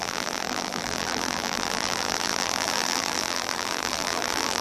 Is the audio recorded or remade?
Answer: remade